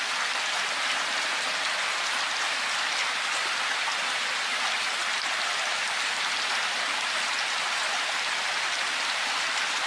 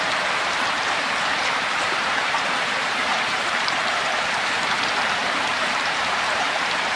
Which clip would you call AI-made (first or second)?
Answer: second